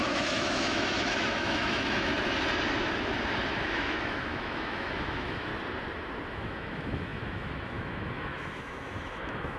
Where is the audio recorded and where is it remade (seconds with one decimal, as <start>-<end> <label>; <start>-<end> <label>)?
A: 0.0-2.1 remade; 2.1-3.5 recorded; 3.5-5.5 remade; 5.5-6.3 recorded; 6.3-9.6 remade